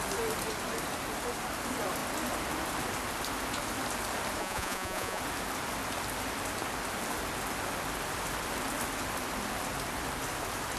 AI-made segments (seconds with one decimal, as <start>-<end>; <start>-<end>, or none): 4.4-5.2